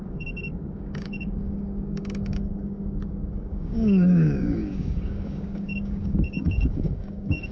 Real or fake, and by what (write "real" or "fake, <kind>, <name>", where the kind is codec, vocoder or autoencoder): fake, codec, DAC